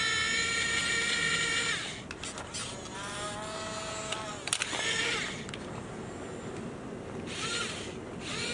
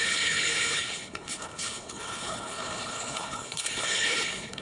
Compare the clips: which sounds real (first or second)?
first